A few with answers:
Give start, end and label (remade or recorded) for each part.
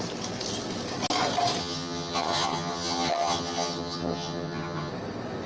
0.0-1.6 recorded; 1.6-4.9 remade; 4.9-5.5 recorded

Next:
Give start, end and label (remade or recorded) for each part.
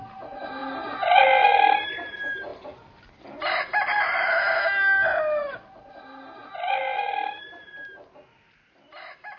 0.0-9.4 recorded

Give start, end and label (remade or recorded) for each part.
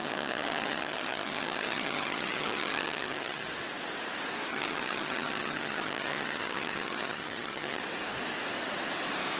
0.0-3.5 remade; 3.5-4.5 recorded; 4.5-7.8 remade; 7.8-9.4 recorded